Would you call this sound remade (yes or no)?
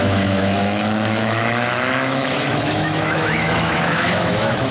yes